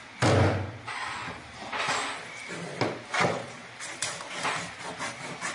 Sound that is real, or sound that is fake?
real